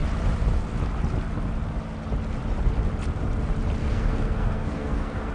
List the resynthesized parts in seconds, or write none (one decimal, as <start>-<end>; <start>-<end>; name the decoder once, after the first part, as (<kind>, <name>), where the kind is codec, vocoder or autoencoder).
3.8-5.3 (codec, SNAC)